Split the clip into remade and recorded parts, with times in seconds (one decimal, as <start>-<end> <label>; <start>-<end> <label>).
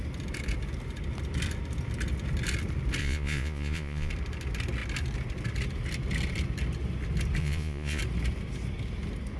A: 0.0-3.0 recorded; 3.0-4.1 remade; 4.1-7.4 recorded; 7.4-8.0 remade; 8.0-9.4 recorded